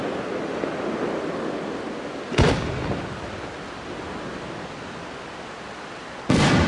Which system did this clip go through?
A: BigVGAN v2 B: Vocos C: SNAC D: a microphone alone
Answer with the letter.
D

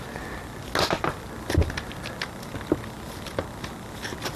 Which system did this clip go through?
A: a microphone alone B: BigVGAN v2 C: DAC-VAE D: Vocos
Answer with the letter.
A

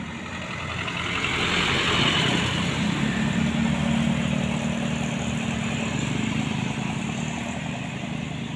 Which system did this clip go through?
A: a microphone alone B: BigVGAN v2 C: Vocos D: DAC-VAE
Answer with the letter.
A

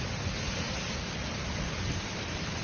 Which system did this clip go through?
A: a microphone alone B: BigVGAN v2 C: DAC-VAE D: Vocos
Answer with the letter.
A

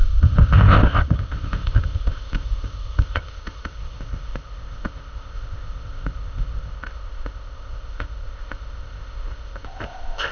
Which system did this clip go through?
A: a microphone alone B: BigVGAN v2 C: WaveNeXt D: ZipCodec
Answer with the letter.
D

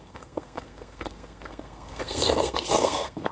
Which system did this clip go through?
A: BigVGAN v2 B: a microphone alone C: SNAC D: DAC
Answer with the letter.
C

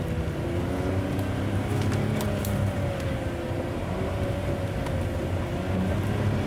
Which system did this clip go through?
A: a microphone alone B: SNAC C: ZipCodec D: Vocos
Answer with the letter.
A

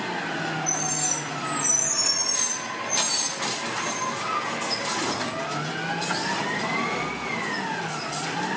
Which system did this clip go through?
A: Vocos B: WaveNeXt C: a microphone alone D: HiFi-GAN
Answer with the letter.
C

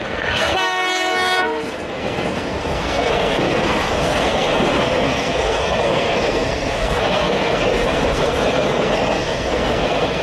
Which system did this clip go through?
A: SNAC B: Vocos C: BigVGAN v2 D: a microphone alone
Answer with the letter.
A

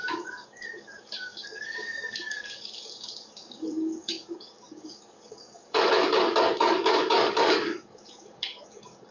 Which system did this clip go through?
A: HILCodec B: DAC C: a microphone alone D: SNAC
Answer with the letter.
B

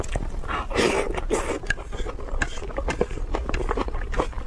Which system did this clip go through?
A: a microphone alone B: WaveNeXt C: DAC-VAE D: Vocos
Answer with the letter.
A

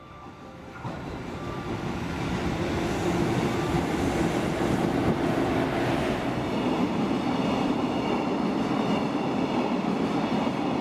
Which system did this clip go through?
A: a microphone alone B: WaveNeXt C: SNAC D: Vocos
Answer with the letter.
A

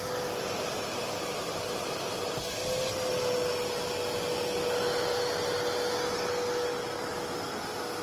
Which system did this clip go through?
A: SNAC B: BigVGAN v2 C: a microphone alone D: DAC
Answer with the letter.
C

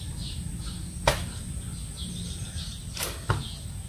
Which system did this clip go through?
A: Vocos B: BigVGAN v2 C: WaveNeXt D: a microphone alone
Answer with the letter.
D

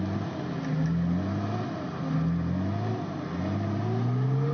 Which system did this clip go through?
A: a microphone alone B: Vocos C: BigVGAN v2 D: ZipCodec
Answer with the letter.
A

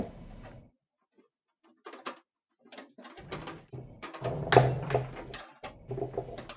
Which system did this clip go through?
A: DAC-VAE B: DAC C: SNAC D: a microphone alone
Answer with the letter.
D